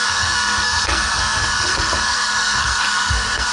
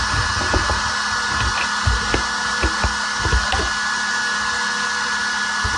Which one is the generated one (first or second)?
first